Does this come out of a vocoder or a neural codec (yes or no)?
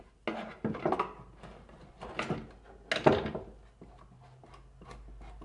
no